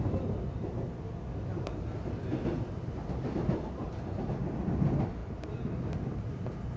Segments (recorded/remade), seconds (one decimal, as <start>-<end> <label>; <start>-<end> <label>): 0.0-6.8 recorded